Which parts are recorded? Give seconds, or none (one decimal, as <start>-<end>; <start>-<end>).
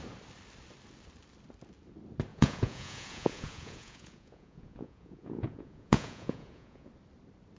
0.0-2.3; 6.9-7.6